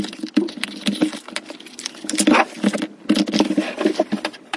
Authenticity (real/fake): real